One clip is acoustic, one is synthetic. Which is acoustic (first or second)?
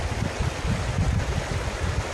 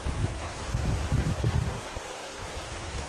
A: first